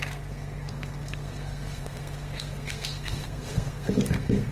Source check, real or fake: fake